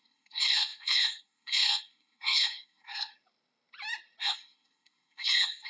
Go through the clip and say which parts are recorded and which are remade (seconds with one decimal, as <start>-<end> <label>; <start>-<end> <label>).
0.0-3.1 remade; 3.1-4.2 recorded; 4.2-5.7 remade